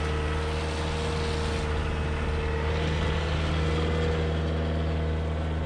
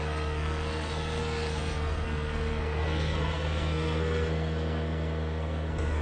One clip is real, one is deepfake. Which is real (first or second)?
first